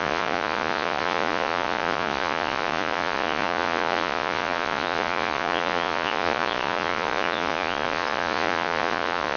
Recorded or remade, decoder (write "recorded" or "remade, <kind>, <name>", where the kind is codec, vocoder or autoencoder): remade, vocoder, Vocos